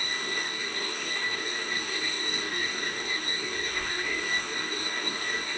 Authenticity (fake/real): fake